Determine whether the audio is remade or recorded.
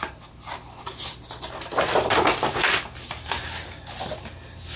recorded